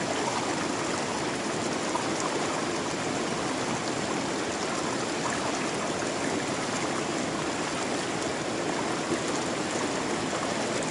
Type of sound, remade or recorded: recorded